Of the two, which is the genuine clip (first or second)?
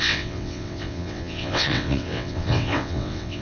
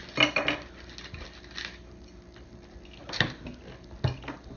second